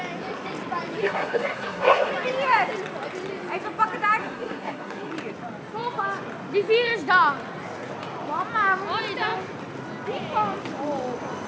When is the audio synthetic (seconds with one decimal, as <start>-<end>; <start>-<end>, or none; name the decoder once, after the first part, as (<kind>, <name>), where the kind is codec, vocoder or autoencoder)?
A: 1.0-2.1 (codec, SNAC); 4.2-5.1